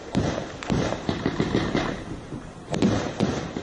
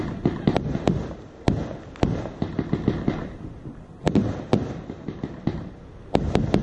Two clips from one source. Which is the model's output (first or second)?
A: first